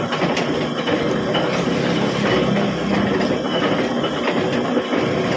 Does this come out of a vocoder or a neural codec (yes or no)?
no